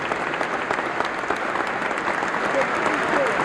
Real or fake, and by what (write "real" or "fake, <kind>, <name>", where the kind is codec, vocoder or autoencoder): real